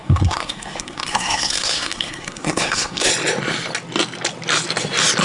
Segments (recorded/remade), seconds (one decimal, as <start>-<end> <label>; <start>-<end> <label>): 0.0-3.1 remade; 3.1-5.2 recorded